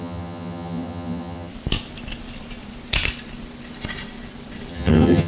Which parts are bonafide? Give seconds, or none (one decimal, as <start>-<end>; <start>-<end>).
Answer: 1.5-4.7